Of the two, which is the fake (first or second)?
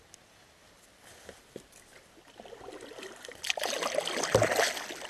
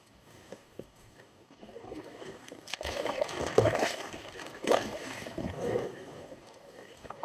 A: second